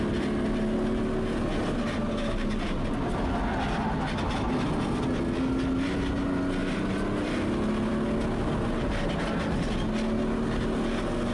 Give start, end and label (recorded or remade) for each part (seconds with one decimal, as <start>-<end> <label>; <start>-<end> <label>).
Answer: 0.0-11.3 recorded